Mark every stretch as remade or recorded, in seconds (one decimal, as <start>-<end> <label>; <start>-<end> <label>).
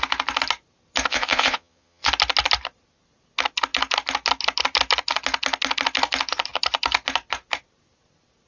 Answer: 0.0-1.1 recorded; 1.1-2.1 remade; 2.1-8.5 recorded